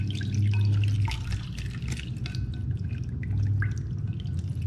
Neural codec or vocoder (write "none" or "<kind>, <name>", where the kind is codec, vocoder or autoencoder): none